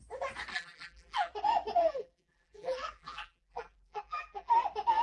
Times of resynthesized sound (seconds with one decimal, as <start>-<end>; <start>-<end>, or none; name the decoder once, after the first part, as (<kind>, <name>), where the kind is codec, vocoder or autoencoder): 0.5-1.3 (vocoder, BigVGAN v2); 1.8-4.5